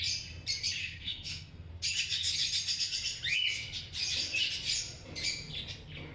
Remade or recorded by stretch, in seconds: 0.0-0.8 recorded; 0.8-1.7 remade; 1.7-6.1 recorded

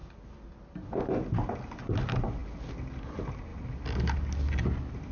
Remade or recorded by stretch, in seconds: 0.0-5.1 recorded

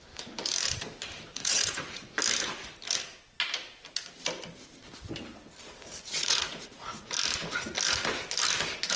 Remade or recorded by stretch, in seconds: 0.0-1.3 recorded; 1.3-2.2 remade; 2.2-6.2 recorded; 6.2-7.1 remade; 7.1-9.0 recorded

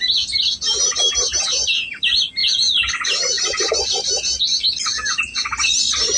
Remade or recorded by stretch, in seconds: 0.0-2.4 recorded; 2.4-2.9 remade; 2.9-6.2 recorded

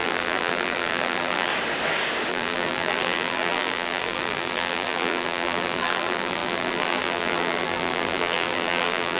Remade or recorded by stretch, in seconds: 0.0-1.5 remade; 1.5-2.3 recorded; 2.3-9.2 remade

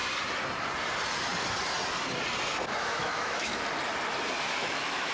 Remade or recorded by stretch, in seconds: 0.0-2.8 recorded; 2.8-3.5 remade; 3.5-4.5 recorded; 4.5-5.1 remade

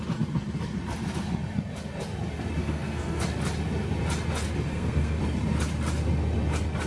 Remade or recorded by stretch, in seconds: 0.0-2.6 recorded; 2.6-3.2 remade; 3.2-4.7 recorded; 4.7-5.2 remade; 5.2-6.9 recorded